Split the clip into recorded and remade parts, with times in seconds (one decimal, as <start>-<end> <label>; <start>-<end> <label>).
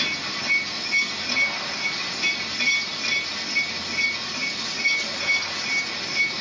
0.0-6.4 recorded